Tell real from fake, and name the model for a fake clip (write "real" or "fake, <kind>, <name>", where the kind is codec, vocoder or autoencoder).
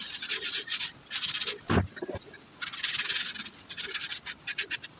real